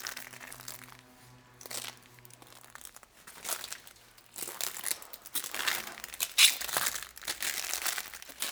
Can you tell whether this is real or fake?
real